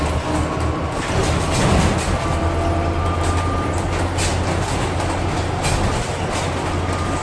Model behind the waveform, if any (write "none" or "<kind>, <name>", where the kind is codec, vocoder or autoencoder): none